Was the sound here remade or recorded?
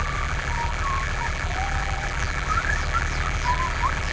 remade